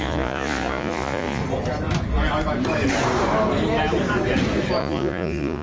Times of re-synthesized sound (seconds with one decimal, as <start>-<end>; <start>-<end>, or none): 0.0-1.4; 4.8-5.6